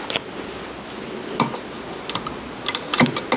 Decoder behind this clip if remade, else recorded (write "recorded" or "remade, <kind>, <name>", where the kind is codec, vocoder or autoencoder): recorded